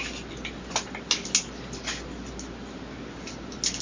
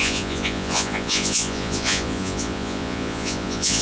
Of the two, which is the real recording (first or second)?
first